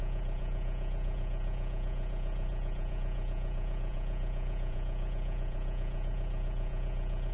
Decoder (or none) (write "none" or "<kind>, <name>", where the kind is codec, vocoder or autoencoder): vocoder, Vocos